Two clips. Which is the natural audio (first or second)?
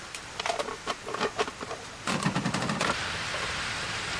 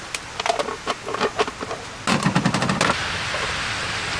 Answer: second